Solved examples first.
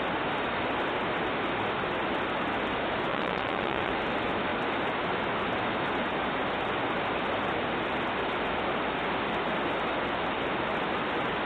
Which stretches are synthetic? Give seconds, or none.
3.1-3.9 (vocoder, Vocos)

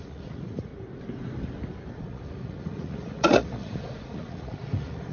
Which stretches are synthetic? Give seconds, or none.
0.0-0.7 (vocoder, Vocos); 1.9-5.1

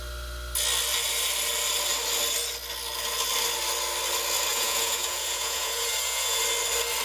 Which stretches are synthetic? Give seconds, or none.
4.5-6.4 (vocoder, Vocos)

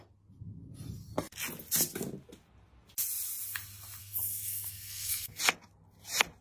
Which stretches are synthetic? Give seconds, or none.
4.0-5.4 (codec, SNAC)

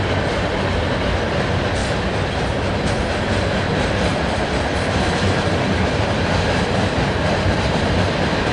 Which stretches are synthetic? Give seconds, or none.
1.8-3.2 (vocoder, BigVGAN v2); 4.1-8.5

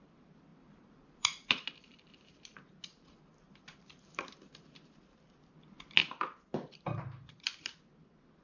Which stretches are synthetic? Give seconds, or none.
0.5-5.4 (vocoder, BigVGAN v2); 6.0-7.8

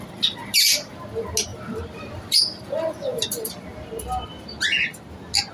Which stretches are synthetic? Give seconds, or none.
1.5-2.4 (vocoder, BigVGAN v2)

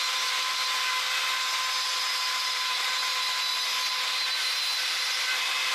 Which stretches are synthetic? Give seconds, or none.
none